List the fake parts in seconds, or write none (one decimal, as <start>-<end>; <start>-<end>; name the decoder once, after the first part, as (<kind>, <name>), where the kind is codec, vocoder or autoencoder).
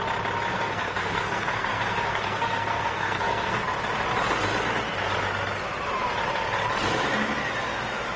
0.5-3.6 (codec, SNAC)